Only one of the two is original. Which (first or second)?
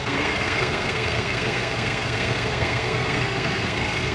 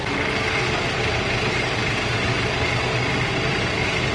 second